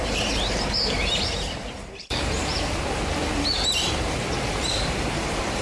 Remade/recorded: remade